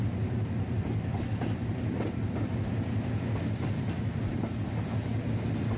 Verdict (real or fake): real